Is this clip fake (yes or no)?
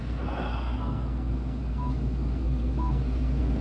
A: yes